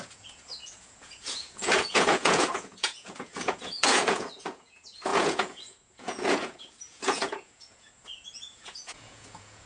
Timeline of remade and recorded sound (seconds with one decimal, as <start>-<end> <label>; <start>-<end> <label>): 0.0-9.7 remade